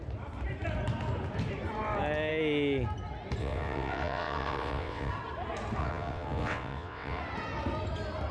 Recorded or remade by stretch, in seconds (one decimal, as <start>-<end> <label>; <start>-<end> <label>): 0.0-3.4 recorded; 3.4-5.1 remade; 5.1-5.8 recorded; 5.8-7.2 remade; 7.2-8.3 recorded